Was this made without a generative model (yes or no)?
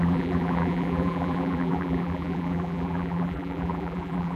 no